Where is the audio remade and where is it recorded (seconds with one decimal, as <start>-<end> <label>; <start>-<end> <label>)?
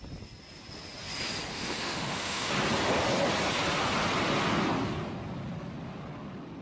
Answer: 0.0-1.5 recorded; 1.5-2.5 remade; 2.5-6.6 recorded